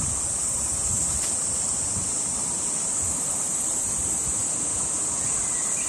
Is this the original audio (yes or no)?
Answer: yes